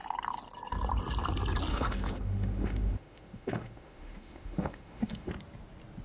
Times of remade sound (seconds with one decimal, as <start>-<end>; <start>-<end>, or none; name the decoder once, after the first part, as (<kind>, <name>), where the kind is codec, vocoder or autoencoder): 1.7-5.3 (autoencoder, DAC-VAE)